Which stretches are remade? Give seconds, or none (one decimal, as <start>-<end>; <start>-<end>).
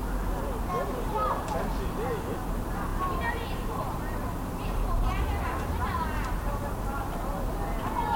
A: none